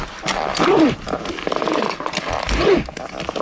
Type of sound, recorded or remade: recorded